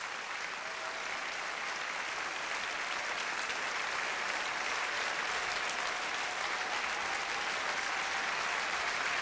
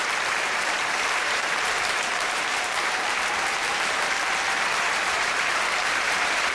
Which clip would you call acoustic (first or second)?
first